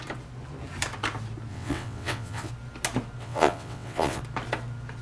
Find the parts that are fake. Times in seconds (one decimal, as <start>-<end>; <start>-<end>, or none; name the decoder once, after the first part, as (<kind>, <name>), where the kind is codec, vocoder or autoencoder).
1.5-2.5 (vocoder, WaveNeXt); 3.2-4.2

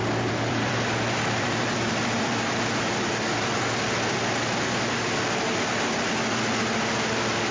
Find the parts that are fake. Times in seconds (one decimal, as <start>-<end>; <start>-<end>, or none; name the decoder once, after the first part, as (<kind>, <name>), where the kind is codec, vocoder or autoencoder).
0.0-4.1 (vocoder, BigVGAN v2)

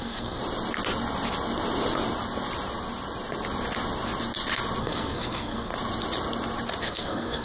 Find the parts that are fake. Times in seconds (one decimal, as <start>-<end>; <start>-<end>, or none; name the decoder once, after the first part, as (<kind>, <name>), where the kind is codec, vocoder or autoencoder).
0.0-0.4 (codec, SNAC); 4.8-5.7; 6.8-7.4

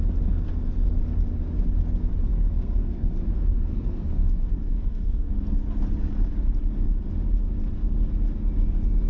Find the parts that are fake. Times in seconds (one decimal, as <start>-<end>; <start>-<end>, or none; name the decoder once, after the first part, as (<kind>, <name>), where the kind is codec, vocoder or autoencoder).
2.3-5.3 (codec, SNAC)

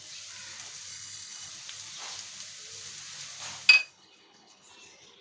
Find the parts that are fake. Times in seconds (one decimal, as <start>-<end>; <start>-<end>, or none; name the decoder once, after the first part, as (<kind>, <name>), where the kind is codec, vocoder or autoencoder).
0.9-1.5 (codec, HILCodec); 3.8-4.7

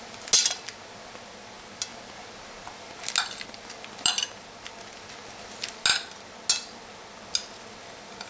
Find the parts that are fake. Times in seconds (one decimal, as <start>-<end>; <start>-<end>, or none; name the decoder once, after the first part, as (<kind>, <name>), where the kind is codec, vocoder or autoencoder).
none